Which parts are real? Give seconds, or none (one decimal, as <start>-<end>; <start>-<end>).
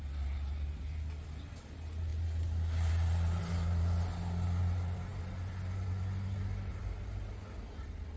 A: 0.0-8.2